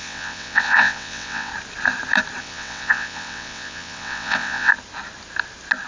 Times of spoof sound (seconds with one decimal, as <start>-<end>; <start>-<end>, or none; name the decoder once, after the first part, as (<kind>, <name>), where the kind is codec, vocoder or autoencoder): 0.0-1.5 (vocoder, WaveNeXt); 2.4-4.7